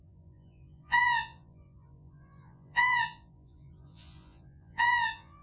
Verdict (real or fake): fake